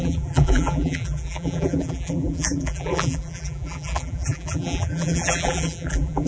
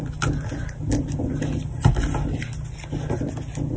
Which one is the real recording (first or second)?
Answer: second